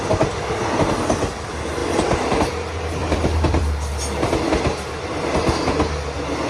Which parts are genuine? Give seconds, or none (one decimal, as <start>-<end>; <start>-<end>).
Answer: 0.0-1.8; 2.4-3.0; 3.6-6.5